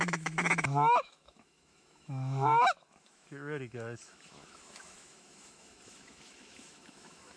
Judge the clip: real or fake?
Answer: fake